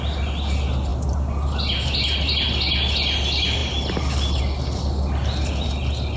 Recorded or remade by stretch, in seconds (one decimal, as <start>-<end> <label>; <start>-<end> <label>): 0.0-6.2 recorded